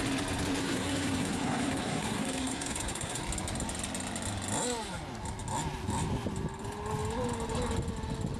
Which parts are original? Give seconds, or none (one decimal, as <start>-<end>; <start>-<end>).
0.0-0.6; 3.2-8.4